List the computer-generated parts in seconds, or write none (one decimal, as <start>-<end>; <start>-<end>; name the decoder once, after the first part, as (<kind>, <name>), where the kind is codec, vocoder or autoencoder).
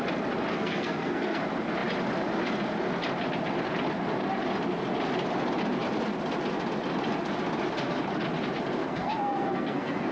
0.5-1.4 (codec, SNAC); 8.8-10.1